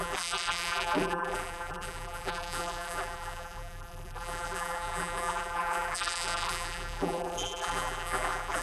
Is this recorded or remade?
remade